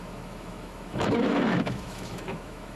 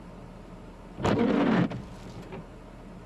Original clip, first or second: second